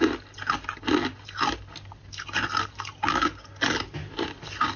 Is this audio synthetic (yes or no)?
no